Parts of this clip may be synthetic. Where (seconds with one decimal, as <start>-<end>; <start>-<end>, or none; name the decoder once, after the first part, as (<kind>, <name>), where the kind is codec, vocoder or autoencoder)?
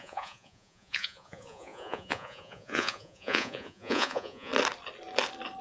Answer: 0.0-4.5 (vocoder, Vocos)